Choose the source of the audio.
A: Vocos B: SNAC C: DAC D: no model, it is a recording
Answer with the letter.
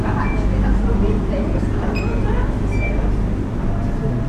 D